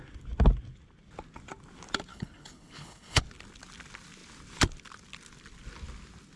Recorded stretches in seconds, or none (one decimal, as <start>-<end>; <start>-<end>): 0.0-2.1; 3.2-6.4

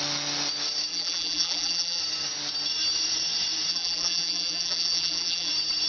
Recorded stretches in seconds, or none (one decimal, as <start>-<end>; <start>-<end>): 0.0-0.9; 2.0-3.7; 5.5-5.9

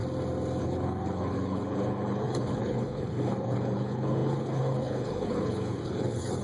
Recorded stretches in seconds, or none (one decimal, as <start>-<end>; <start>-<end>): 0.0-0.6

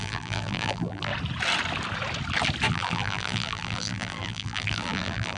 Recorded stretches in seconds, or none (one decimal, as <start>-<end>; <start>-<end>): 1.1-2.7

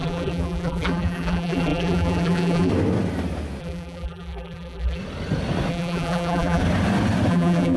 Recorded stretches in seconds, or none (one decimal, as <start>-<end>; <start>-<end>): 2.7-3.6; 5.0-5.7; 6.6-7.3

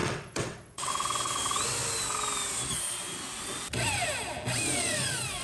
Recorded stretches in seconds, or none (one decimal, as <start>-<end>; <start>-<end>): 0.9-5.4

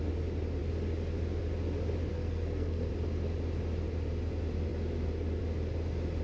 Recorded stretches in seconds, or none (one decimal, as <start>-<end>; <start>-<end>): 0.0-2.1; 2.9-6.2

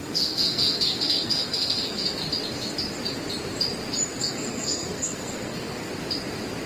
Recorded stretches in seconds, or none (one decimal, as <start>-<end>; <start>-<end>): 2.2-4.2; 5.9-6.7